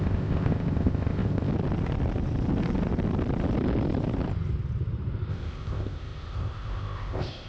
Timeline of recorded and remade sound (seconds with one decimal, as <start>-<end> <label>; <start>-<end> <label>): 0.0-1.5 remade; 1.5-5.3 recorded; 5.3-7.5 remade